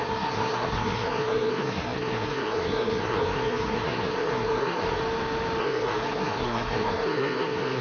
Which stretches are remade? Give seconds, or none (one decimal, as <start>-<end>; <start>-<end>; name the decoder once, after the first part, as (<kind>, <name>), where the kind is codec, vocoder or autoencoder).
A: 0.0-5.0 (codec, SNAC); 5.6-7.8